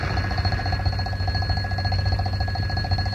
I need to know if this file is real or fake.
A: real